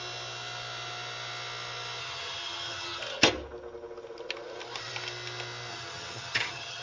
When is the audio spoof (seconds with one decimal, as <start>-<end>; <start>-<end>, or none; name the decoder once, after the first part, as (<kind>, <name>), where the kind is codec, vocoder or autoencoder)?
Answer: 2.0-3.0 (vocoder, HiFi-GAN); 5.7-6.8